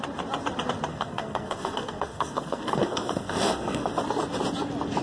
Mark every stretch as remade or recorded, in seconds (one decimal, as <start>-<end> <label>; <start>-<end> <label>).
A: 0.0-0.9 recorded; 0.9-3.9 remade; 3.9-5.0 recorded